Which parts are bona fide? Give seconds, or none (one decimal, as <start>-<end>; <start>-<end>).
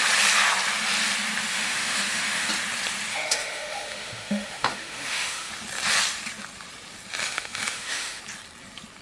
0.0-1.5; 2.5-3.1; 5.5-7.2; 8.2-9.0